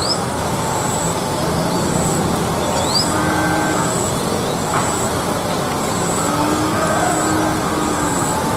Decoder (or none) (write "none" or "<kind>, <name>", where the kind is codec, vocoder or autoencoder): none